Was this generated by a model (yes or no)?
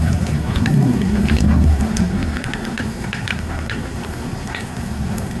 yes